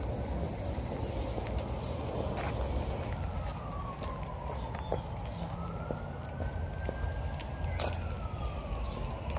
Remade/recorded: recorded